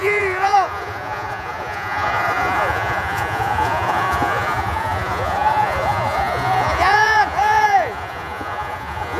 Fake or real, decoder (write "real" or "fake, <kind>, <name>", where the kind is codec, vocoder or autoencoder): fake, vocoder, Vocos